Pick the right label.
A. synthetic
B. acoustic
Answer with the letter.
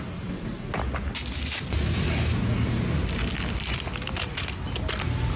B